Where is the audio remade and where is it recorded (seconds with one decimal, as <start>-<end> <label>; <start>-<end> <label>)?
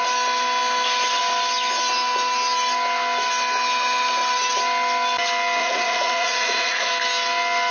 0.0-5.6 recorded; 5.6-6.9 remade; 6.9-7.7 recorded